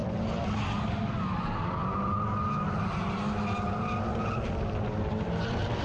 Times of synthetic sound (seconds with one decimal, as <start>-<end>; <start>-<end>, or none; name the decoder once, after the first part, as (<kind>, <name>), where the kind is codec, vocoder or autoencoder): none